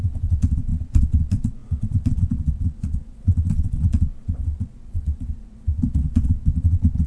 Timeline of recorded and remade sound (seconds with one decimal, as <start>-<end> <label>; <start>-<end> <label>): 0.0-7.1 remade